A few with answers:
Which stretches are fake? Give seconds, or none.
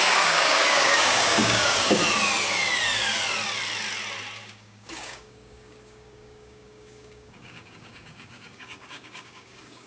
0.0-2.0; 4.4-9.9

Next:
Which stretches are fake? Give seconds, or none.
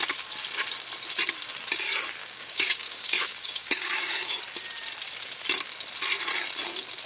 2.2-4.4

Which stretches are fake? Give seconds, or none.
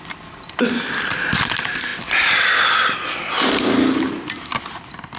none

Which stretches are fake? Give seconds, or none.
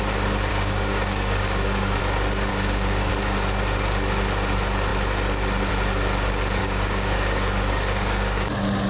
0.5-2.0; 2.5-3.1; 6.6-8.5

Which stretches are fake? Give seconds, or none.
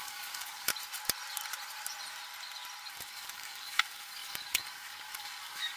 0.0-0.7; 2.9-5.8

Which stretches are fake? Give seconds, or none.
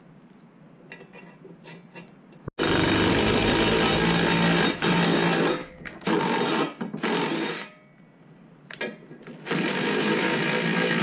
5.6-6.1; 9.7-10.4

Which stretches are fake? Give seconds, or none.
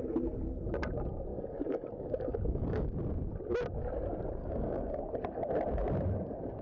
1.3-2.9; 4.4-5.1